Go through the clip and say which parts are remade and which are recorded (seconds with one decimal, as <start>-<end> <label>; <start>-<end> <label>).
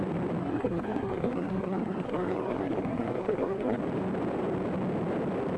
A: 0.0-0.4 recorded; 0.4-3.8 remade; 3.8-5.6 recorded